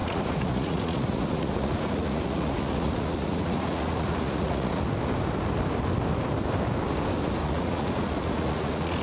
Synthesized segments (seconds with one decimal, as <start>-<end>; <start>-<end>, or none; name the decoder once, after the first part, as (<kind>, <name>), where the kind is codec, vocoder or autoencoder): 0.0-4.8 (vocoder, Vocos); 7.4-9.0